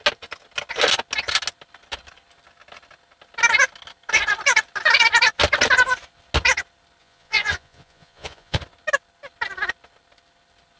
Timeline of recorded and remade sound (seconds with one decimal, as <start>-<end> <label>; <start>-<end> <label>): 0.0-7.0 recorded; 7.0-8.6 remade; 8.6-10.8 recorded